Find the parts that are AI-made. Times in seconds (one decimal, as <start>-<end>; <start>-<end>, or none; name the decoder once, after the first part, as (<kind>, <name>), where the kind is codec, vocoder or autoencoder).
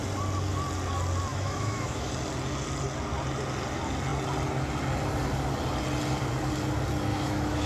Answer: 1.3-2.1 (autoencoder, DAC-VAE); 7.1-7.7